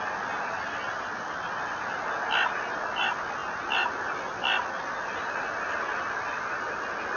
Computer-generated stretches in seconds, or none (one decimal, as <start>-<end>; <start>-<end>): none